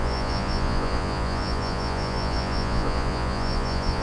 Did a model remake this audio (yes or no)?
yes